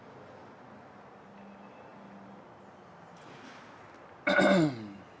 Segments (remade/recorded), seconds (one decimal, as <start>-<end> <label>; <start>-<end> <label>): 0.0-5.2 recorded